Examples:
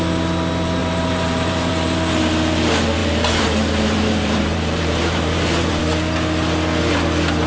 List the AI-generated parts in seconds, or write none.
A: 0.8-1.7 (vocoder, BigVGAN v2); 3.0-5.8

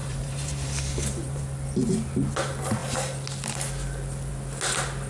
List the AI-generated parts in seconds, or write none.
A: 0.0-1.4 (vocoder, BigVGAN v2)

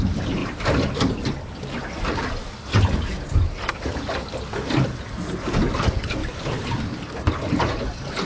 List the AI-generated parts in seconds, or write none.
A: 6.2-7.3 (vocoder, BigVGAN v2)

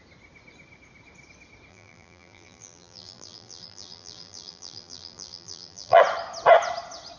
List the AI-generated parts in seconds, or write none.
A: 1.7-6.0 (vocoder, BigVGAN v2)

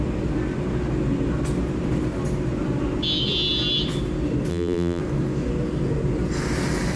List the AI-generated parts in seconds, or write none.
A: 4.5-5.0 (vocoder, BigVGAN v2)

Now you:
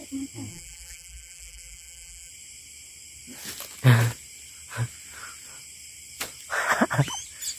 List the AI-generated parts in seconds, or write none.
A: 0.5-2.3 (vocoder, BigVGAN v2)

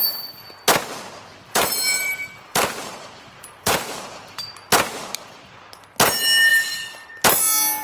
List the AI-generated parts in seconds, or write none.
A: 1.3-4.4 (vocoder, BigVGAN v2); 6.5-7.1

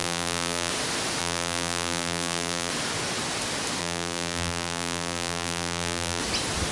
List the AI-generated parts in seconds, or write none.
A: 0.0-0.7 (vocoder, BigVGAN v2); 1.2-2.7; 3.8-6.2